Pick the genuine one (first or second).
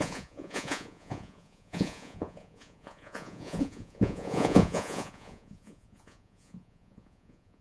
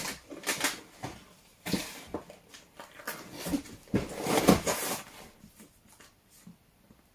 second